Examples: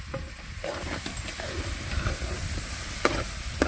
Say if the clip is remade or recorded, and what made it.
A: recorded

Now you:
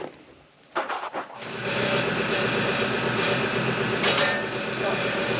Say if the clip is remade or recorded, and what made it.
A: recorded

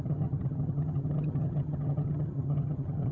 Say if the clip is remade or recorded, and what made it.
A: remade, vocoder, HiFi-GAN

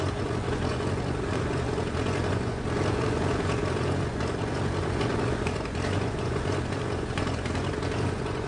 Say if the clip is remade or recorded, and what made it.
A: remade, vocoder, Vocos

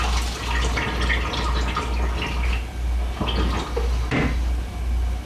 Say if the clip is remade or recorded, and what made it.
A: recorded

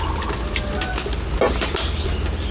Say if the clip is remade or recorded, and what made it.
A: recorded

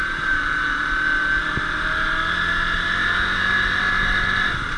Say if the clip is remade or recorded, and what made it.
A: recorded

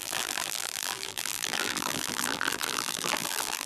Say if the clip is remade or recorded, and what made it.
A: remade, vocoder, BigVGAN v2